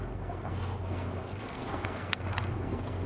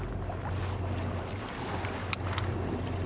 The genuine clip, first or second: second